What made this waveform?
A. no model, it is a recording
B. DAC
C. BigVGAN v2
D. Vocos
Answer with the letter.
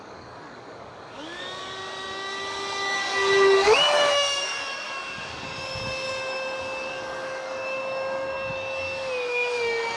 B